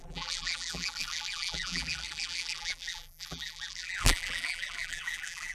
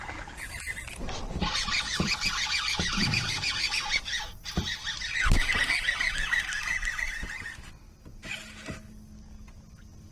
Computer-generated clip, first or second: first